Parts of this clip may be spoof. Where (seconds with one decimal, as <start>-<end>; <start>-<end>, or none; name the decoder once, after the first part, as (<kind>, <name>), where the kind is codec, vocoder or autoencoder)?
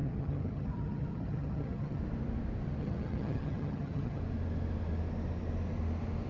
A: 0.0-2.0 (vocoder, HiFi-GAN); 2.8-4.2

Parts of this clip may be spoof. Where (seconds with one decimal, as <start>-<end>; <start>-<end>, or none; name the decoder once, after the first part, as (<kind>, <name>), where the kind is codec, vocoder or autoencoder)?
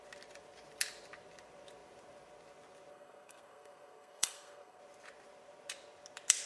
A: 2.9-4.8 (codec, SNAC)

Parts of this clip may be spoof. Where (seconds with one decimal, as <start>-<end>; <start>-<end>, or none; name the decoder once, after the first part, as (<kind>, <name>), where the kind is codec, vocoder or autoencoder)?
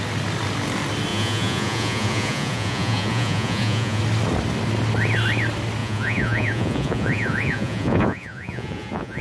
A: 1.1-4.0 (vocoder, Vocos); 5.8-9.2